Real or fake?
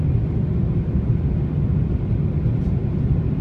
real